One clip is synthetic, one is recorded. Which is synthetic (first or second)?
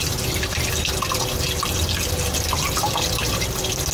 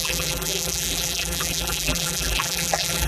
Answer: second